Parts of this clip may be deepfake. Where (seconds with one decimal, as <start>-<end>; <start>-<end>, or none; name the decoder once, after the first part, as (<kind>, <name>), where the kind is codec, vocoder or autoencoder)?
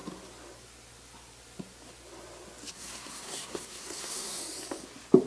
2.7-4.4 (codec, SNAC)